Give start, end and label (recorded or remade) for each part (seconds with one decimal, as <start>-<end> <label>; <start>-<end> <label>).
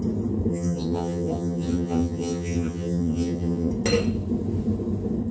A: 0.0-0.5 recorded; 0.5-3.7 remade; 3.7-5.3 recorded